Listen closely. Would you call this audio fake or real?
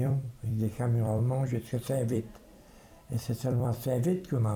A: fake